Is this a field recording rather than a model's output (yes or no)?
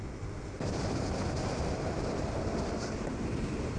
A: yes